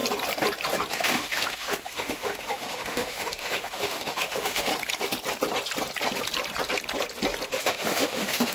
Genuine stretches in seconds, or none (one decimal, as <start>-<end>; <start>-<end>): 0.0-0.9; 4.7-7.5

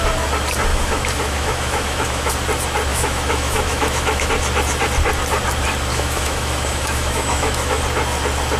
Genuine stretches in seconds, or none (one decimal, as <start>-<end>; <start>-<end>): 0.0-0.7; 2.3-2.9; 4.3-5.9; 7.8-8.6

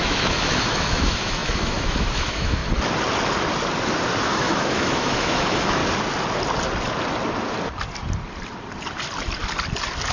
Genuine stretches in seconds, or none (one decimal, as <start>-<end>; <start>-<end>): 2.6-4.2; 5.8-10.1

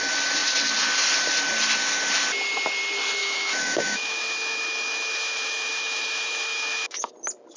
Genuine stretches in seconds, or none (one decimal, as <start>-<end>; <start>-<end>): 0.0-3.2; 7.1-7.6

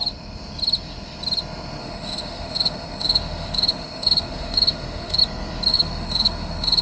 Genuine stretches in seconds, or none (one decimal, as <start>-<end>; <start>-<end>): 0.0-1.8; 5.2-5.7